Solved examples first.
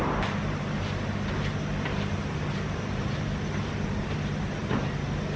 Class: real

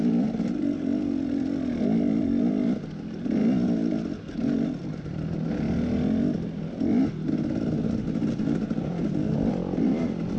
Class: real